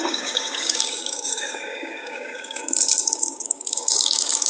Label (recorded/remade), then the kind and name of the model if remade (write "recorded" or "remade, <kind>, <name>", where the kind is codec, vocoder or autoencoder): remade, codec, DAC